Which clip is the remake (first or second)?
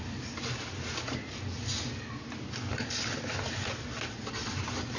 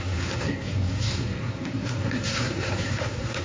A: second